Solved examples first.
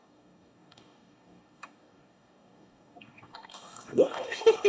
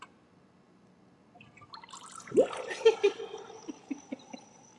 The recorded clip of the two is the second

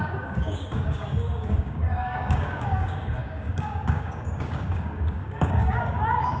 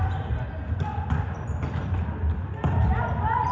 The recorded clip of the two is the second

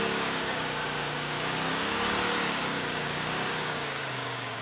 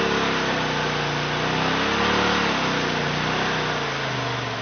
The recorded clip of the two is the second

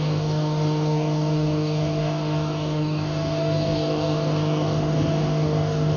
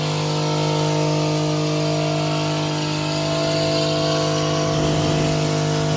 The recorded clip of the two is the second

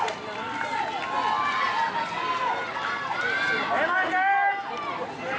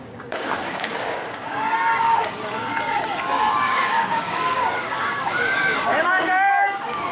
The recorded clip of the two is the first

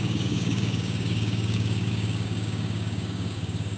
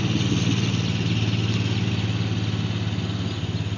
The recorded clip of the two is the second